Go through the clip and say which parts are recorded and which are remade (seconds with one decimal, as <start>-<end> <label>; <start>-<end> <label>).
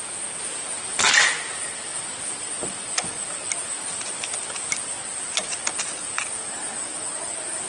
0.0-7.7 recorded